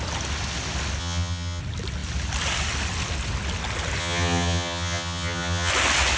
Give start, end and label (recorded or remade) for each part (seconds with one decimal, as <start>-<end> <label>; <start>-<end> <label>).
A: 0.0-1.0 recorded; 1.0-1.6 remade; 1.6-4.0 recorded; 4.0-5.7 remade; 5.7-6.2 recorded